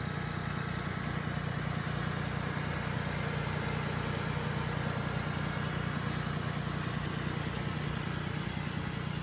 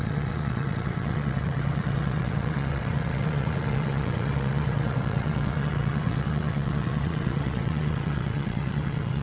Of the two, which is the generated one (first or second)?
second